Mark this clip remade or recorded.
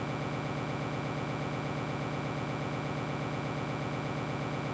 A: remade